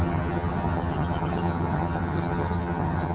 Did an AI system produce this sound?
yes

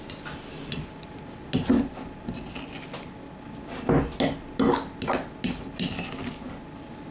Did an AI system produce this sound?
no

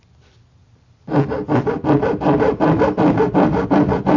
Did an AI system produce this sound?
no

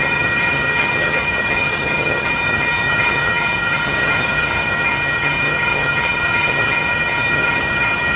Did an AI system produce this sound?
yes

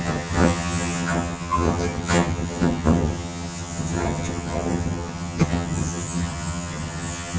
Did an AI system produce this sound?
yes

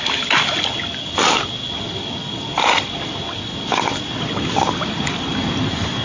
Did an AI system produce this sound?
no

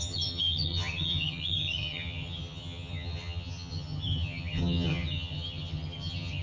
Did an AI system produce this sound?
yes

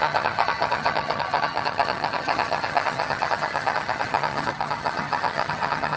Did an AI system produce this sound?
yes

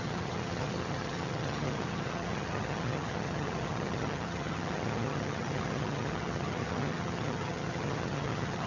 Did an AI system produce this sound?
yes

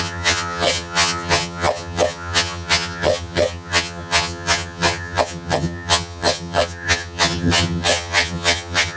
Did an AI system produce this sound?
yes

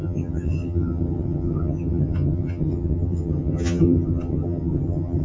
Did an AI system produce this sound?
yes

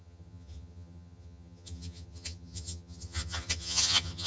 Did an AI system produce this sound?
yes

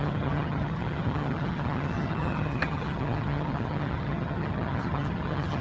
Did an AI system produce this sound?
yes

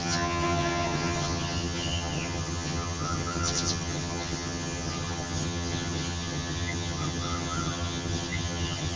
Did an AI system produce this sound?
yes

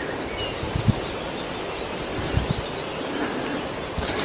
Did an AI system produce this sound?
no